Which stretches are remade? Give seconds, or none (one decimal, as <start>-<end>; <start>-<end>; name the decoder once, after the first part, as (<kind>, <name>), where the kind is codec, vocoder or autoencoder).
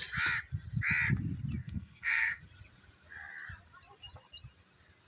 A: 1.6-2.4 (codec, SNAC)